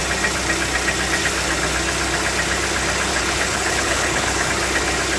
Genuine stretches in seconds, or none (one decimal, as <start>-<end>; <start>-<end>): 0.0-3.1; 4.5-5.2